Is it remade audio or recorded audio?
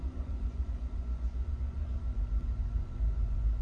remade